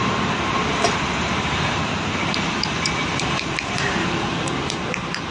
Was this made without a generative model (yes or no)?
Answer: no